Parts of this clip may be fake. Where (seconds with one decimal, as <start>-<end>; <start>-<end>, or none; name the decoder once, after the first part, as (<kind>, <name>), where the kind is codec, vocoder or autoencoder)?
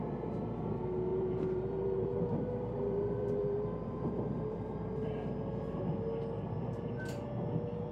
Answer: 1.1-5.8 (vocoder, BigVGAN v2)